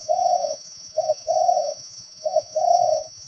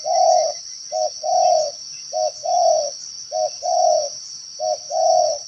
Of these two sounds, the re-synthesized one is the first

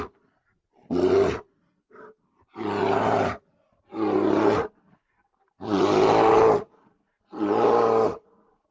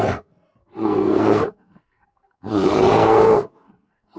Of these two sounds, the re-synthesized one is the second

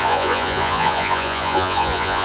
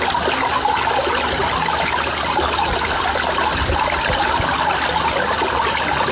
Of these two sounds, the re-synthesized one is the first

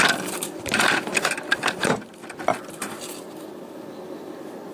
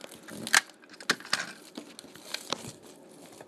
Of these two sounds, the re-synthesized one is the first